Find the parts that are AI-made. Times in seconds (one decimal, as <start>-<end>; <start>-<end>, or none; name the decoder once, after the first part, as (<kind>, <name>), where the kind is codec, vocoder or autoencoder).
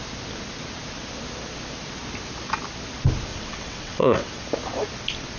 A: 3.3-4.3 (vocoder, WaveNeXt)